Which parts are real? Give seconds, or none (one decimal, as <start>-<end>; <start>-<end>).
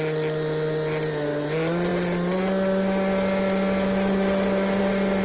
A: 0.0-5.2